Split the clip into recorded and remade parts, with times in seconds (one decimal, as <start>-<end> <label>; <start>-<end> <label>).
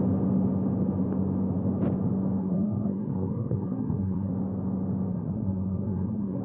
0.0-2.4 recorded; 2.4-4.3 remade; 4.3-5.1 recorded; 5.1-6.4 remade